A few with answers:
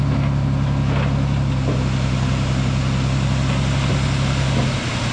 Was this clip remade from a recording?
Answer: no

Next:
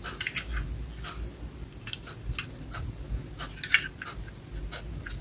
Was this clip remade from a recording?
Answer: no